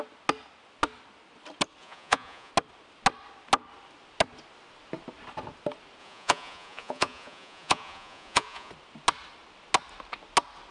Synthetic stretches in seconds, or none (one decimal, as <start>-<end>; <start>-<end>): 1.8-2.5; 6.0-8.7